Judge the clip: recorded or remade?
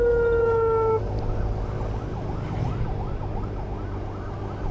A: recorded